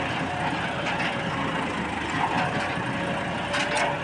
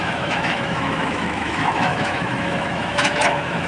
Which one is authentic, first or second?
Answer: first